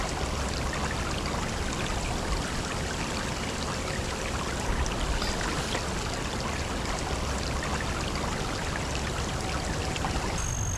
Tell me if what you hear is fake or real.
real